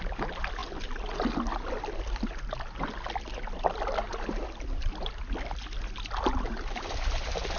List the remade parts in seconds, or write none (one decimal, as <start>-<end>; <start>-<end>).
4.1-5.1